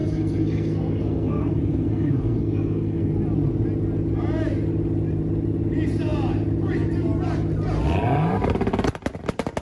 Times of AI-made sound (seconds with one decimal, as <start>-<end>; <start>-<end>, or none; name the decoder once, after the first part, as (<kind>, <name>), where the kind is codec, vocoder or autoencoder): 0.0-3.1 (codec, SNAC)